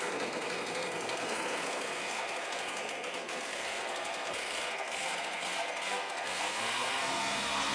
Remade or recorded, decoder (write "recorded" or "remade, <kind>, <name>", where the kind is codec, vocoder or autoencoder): remade, codec, SNAC